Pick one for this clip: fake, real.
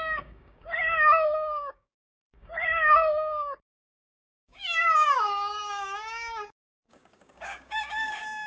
fake